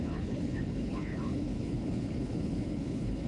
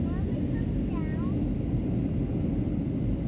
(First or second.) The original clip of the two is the second